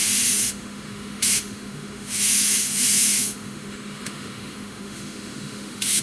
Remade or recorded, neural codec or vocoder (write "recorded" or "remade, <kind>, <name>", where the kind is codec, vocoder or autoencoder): remade, autoencoder, DAC-VAE